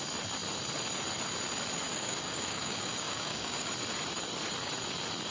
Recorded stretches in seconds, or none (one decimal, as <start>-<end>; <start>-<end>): 0.0-1.9; 3.7-5.3